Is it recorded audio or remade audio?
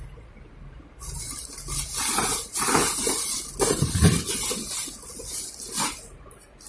recorded